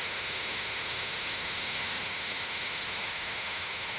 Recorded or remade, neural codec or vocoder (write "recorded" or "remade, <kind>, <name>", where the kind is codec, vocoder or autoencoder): remade, autoencoder, DAC-VAE